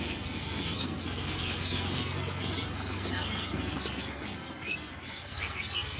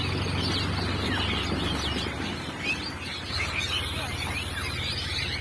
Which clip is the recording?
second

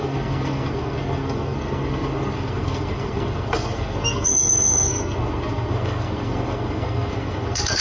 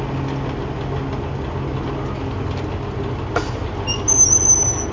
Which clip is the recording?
second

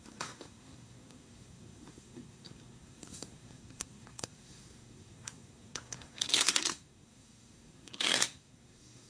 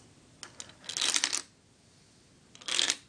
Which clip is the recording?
second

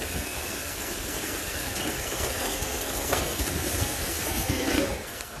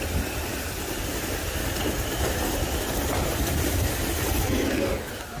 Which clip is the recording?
second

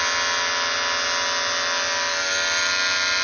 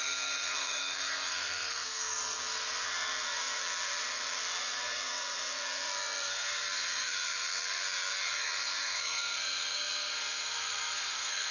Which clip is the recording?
first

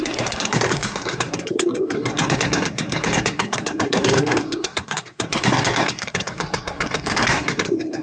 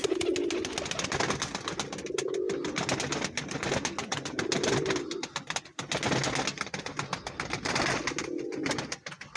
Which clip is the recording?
second